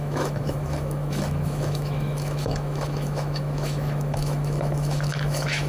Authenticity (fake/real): fake